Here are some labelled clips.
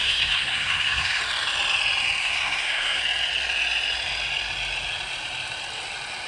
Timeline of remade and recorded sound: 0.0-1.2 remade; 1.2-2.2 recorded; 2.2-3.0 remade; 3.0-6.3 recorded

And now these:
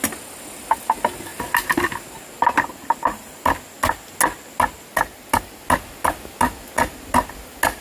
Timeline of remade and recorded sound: 0.0-7.8 recorded